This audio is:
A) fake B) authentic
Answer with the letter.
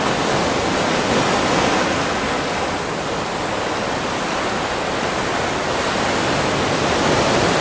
B